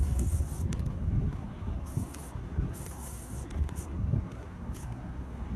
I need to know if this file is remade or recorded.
remade